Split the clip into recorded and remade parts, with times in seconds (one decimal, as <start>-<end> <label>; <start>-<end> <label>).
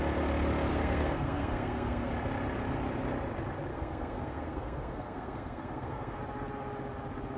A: 0.0-0.7 recorded; 0.7-2.1 remade; 2.1-3.7 recorded; 3.7-6.2 remade; 6.2-7.4 recorded